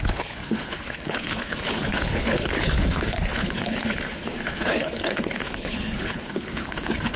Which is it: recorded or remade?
remade